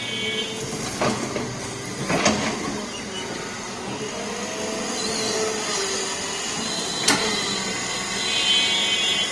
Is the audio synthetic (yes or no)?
no